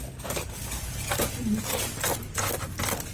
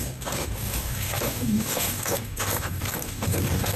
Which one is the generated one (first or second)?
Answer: second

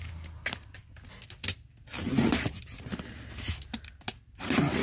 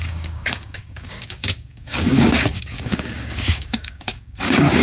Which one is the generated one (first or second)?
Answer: second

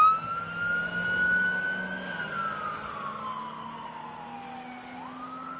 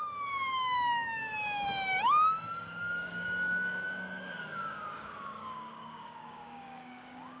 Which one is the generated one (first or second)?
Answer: second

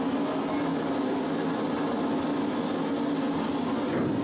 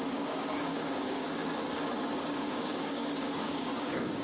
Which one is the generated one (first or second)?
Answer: second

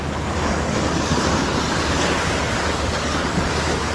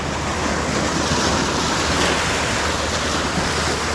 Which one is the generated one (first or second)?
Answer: first